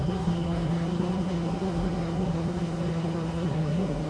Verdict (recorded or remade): remade